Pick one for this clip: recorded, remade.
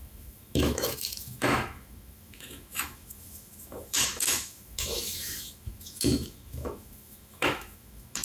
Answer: remade